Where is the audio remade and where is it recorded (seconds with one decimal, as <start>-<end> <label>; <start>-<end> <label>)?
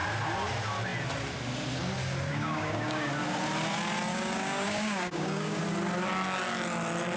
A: 0.0-2.3 recorded; 2.3-3.1 remade; 3.1-4.1 recorded; 4.1-5.6 remade; 5.6-7.2 recorded